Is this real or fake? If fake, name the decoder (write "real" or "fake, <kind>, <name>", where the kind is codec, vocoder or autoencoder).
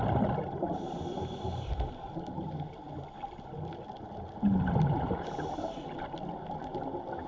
real